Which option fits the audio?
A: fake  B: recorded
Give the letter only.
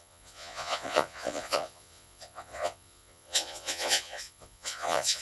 A